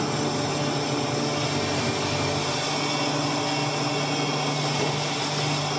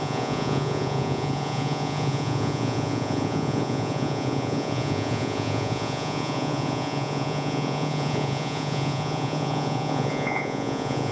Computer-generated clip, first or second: second